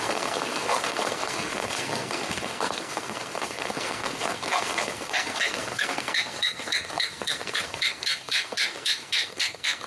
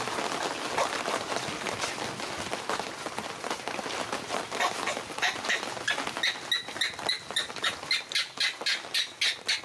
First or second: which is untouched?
second